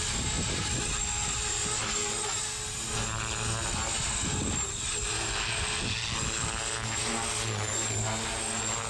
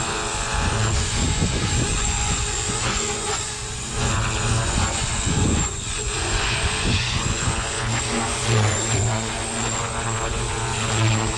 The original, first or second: first